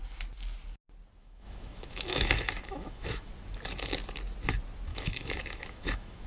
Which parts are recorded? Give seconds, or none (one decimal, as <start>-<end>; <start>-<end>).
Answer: 0.0-1.2; 3.3-4.9